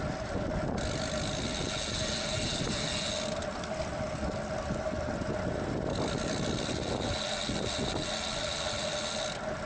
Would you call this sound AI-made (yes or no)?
no